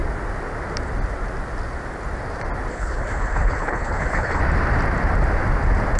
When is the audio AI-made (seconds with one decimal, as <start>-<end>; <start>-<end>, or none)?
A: 2.7-4.4

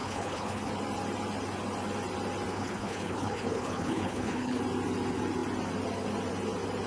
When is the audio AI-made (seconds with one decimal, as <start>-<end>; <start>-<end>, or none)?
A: 0.0-0.7; 2.5-4.6

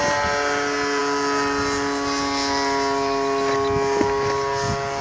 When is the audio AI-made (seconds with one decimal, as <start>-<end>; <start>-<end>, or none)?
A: none

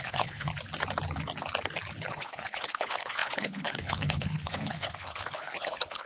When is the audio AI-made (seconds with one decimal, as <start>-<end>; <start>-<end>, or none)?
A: 0.0-0.5; 2.1-6.1

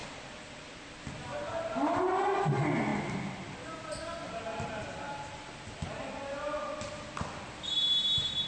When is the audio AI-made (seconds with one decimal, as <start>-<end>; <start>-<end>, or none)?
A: none

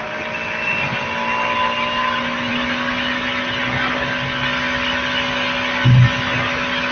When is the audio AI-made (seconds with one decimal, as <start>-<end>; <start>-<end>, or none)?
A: none

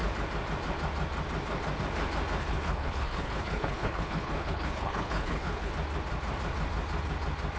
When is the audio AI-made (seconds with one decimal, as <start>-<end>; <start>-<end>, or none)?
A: 2.4-5.7